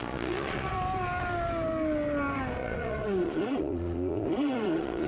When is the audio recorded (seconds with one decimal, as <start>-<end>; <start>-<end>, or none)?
0.7-2.6